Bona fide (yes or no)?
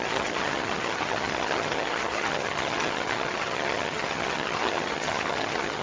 no